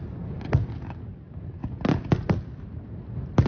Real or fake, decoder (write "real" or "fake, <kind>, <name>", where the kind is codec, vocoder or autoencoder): real